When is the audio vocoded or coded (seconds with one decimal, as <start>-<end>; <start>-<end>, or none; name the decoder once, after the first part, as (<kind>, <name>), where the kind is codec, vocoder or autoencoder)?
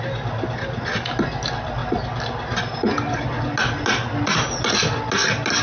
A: none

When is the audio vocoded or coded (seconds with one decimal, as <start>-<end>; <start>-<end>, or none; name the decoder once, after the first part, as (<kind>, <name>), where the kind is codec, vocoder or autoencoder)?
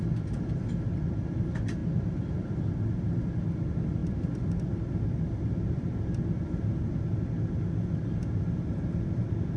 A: 1.8-2.8 (vocoder, BigVGAN v2); 4.0-4.8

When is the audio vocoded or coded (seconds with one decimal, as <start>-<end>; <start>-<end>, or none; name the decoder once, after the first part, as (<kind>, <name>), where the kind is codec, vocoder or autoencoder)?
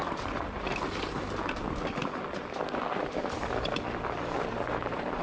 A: 0.0-1.4 (vocoder, BigVGAN v2); 4.5-5.2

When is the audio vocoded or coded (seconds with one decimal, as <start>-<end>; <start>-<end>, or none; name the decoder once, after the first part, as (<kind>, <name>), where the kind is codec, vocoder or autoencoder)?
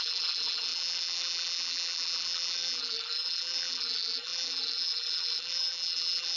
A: 0.0-6.4 (vocoder, BigVGAN v2)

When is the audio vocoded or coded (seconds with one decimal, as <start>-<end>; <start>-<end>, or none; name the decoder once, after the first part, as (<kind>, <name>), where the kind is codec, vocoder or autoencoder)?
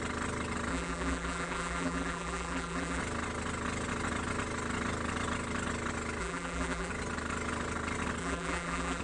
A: 0.7-3.0 (vocoder, BigVGAN v2); 6.2-6.9; 8.2-9.0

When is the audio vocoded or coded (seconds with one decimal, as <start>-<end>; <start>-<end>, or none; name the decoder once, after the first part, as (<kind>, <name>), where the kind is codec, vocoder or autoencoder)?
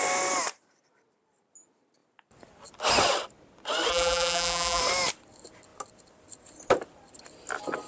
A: 3.9-4.8 (vocoder, BigVGAN v2)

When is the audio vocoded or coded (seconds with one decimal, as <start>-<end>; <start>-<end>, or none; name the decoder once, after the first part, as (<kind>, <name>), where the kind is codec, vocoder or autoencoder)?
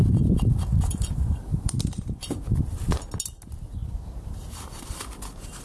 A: 1.5-2.1 (vocoder, BigVGAN v2)